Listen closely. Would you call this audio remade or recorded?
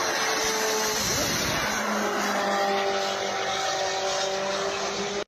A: recorded